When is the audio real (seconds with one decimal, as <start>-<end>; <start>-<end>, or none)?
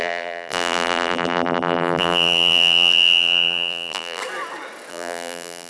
4.2-4.9